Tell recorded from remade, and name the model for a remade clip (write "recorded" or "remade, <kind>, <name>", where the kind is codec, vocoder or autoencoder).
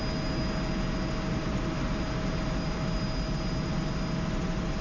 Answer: recorded